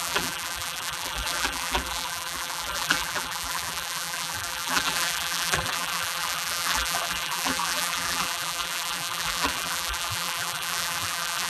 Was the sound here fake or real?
fake